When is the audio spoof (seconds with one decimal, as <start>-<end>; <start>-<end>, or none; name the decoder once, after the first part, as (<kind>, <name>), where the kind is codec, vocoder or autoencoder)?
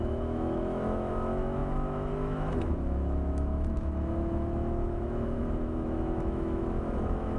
0.0-7.4 (autoencoder, DAC-VAE)